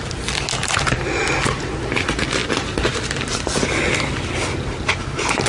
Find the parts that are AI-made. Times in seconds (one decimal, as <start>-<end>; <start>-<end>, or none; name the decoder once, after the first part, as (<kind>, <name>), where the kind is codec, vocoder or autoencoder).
none